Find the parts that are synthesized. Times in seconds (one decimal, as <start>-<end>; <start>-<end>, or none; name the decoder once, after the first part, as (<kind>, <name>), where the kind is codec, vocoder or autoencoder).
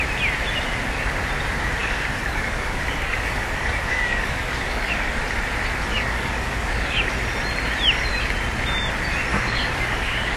1.8-5.2 (codec, DAC); 5.9-7.1; 9.3-10.4